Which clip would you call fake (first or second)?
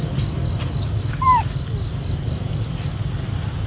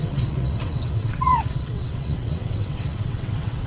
second